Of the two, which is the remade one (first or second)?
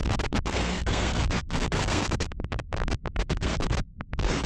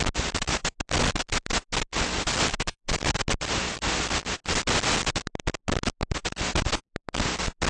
first